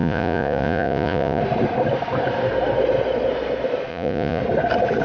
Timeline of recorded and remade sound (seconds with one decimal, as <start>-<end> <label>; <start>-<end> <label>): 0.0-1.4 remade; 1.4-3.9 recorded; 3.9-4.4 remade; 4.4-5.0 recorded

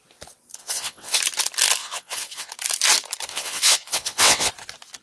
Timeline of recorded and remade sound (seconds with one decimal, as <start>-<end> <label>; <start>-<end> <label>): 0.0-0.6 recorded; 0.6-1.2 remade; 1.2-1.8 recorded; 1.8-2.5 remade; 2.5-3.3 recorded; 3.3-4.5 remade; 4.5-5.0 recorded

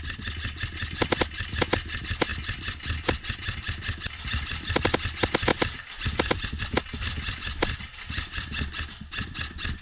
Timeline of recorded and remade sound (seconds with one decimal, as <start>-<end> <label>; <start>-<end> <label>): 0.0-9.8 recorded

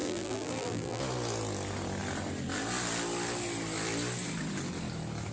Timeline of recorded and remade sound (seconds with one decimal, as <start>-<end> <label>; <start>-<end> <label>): 0.0-1.0 remade; 1.0-5.3 recorded